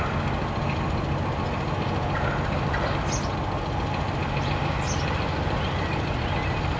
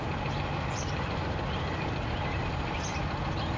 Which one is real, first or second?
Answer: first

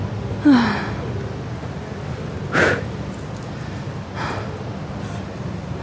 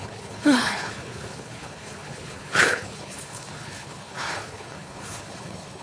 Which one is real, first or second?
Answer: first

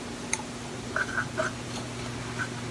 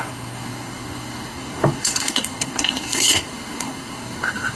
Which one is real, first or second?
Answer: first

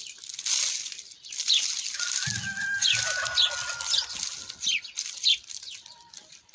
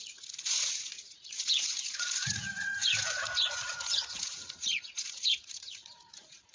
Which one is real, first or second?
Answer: first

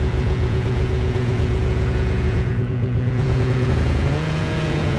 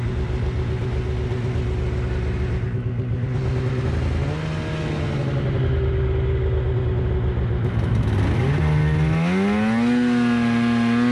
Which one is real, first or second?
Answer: second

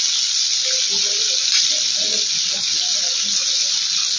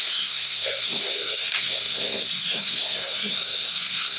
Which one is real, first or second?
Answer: first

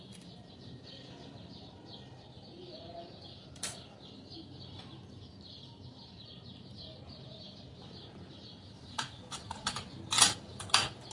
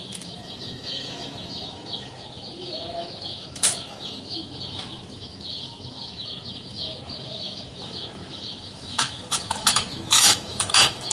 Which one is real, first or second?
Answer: first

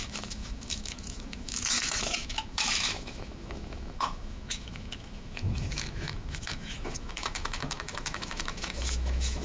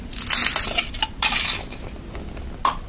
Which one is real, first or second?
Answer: second